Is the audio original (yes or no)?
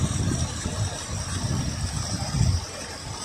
yes